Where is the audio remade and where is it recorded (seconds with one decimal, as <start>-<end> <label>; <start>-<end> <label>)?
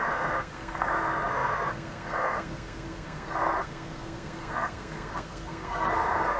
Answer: 0.0-6.4 remade